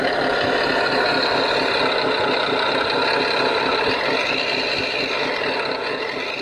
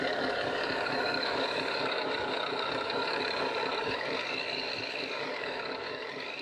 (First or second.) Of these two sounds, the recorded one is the first